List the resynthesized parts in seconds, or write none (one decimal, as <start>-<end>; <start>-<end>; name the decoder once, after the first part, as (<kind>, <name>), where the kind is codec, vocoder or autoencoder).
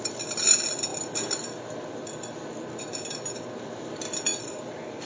4.3-5.1 (vocoder, BigVGAN v2)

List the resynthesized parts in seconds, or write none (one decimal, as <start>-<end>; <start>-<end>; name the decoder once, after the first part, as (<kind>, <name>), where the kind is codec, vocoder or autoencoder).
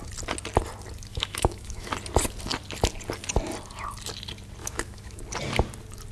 1.1-1.9 (autoencoder, DAC-VAE); 4.6-5.2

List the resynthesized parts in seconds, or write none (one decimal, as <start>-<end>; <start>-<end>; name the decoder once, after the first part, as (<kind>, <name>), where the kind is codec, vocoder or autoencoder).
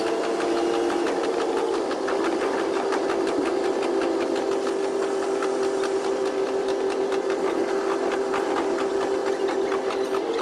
none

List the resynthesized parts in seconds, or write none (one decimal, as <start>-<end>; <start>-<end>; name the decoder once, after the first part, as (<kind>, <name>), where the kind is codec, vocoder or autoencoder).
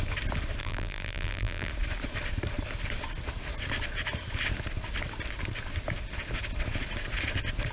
0.6-1.7 (vocoder, BigVGAN v2)